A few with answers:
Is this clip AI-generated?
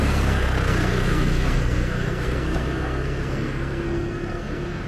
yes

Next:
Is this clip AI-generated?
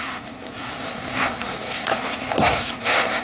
yes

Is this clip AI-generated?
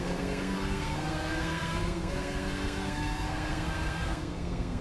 yes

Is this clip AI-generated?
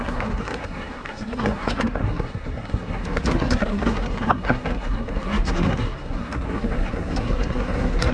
yes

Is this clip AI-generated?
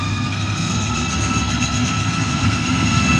yes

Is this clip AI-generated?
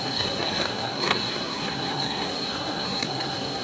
yes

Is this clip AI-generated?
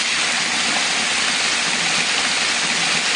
no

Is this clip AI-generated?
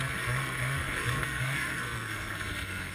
yes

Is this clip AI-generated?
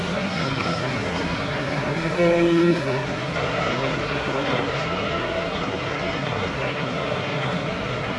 yes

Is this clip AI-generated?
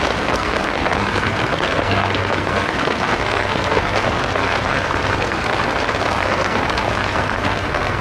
yes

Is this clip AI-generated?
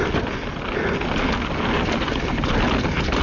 no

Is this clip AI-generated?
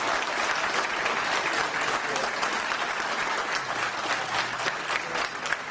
no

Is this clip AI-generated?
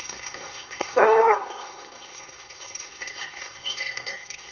yes